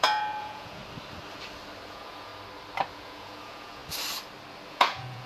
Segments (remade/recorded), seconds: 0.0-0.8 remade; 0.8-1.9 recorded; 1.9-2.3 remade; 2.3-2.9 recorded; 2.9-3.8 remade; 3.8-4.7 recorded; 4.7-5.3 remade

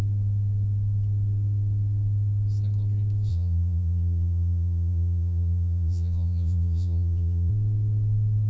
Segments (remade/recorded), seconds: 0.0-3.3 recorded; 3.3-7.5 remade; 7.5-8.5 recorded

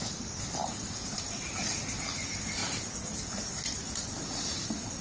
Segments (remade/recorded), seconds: 0.0-0.6 recorded; 0.6-1.2 remade; 1.2-2.6 recorded; 2.6-3.5 remade; 3.5-5.0 recorded

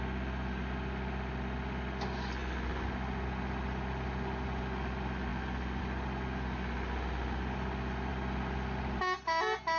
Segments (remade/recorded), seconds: 0.0-9.8 recorded

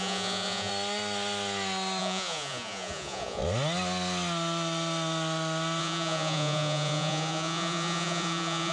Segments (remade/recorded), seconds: 0.0-0.7 remade; 0.7-2.0 recorded; 2.0-3.4 remade; 3.4-5.8 recorded; 5.8-8.7 remade

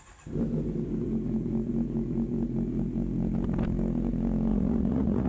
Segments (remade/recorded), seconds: 0.0-4.5 recorded; 4.5-5.3 remade

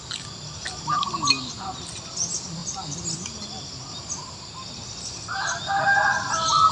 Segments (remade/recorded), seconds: 0.0-6.7 recorded